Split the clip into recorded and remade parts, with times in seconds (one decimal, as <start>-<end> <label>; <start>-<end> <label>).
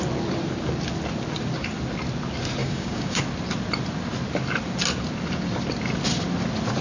0.0-2.6 recorded; 2.6-3.2 remade; 3.2-6.8 recorded